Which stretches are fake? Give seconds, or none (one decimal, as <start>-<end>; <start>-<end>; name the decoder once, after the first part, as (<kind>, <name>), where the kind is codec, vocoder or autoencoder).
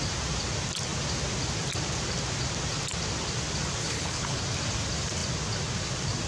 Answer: 3.8-4.4 (codec, HILCodec)